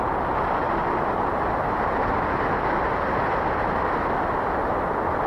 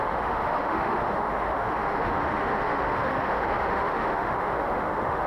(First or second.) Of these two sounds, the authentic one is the first